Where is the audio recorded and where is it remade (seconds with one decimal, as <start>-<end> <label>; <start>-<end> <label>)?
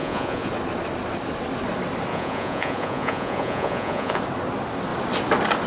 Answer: 0.0-0.5 remade; 0.5-2.1 recorded; 2.1-4.2 remade; 4.2-5.7 recorded